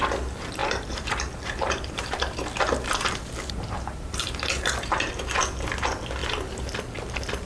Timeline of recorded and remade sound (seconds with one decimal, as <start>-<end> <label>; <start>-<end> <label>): 0.0-0.6 recorded; 0.6-5.1 remade; 5.1-7.5 recorded